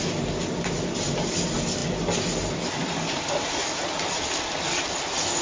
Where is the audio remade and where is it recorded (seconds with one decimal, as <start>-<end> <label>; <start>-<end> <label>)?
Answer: 0.0-5.4 recorded